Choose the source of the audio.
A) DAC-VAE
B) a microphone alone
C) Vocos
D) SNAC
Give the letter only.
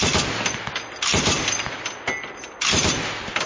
B